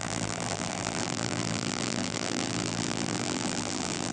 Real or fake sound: fake